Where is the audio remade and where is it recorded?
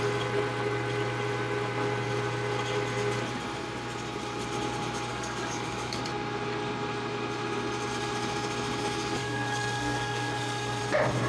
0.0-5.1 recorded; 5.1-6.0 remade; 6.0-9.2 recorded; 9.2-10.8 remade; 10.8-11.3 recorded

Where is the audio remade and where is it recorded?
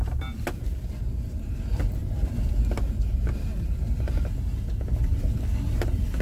0.0-6.2 recorded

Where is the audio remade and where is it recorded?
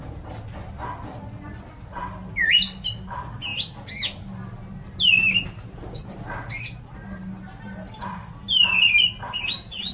0.0-9.9 recorded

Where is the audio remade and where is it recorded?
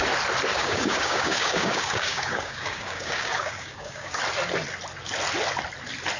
0.0-0.5 recorded; 0.5-4.2 remade; 4.2-6.2 recorded